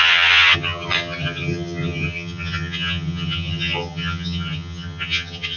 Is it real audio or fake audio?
fake